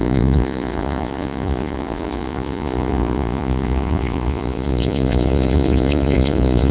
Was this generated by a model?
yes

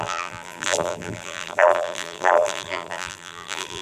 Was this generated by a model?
yes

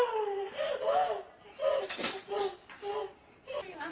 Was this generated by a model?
no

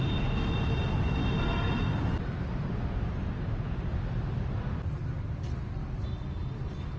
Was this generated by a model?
no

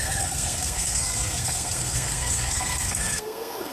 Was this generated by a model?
yes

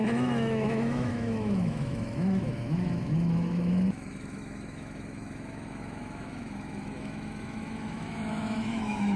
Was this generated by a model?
yes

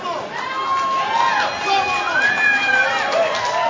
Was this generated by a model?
no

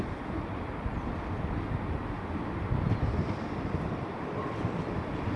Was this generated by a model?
no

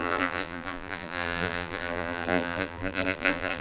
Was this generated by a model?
yes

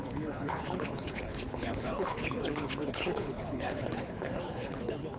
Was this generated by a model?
yes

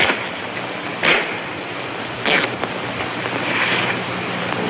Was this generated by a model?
no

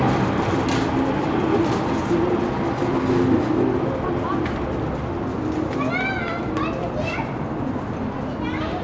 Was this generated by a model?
no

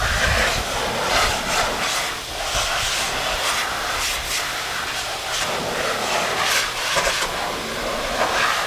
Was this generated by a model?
no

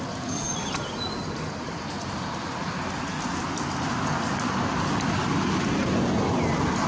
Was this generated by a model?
no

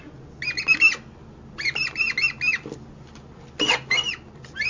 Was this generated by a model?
no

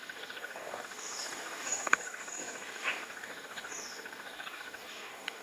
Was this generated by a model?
yes